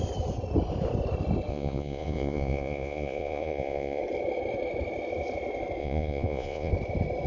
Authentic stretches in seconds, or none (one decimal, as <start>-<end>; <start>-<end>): 0.0-1.5; 4.0-5.8; 6.7-7.3